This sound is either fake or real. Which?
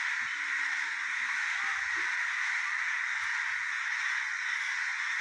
real